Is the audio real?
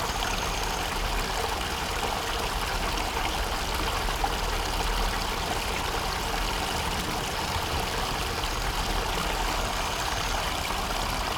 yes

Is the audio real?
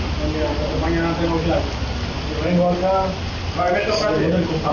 yes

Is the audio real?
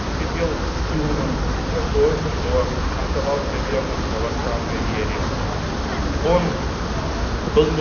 yes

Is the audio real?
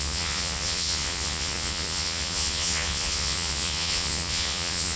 no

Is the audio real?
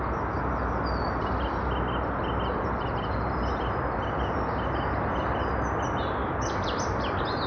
yes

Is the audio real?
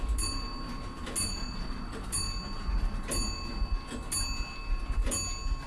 yes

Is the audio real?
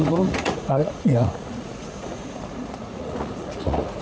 no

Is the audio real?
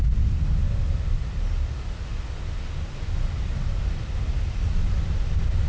yes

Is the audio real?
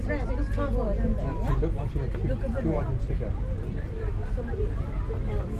yes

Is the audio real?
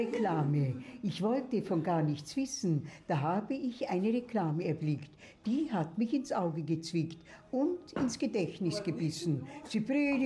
yes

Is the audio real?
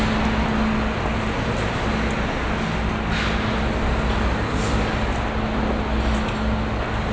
yes